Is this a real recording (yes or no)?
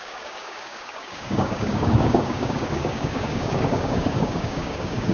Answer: no